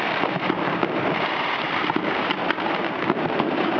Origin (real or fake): fake